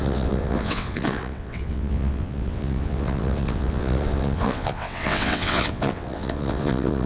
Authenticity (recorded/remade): remade